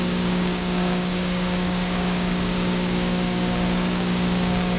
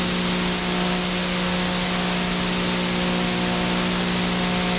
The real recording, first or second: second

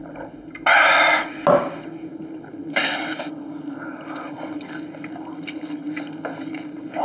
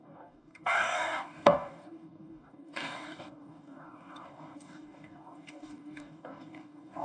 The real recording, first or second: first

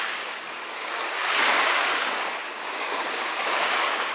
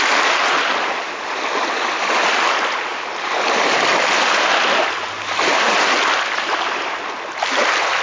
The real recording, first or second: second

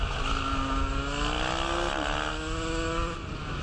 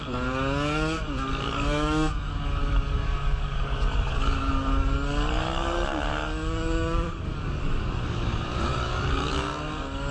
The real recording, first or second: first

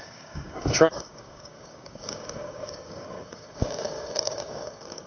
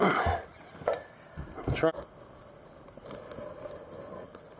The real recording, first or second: second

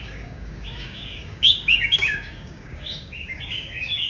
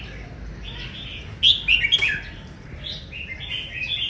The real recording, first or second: second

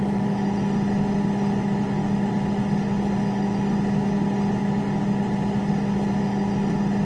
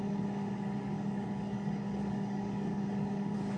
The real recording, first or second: first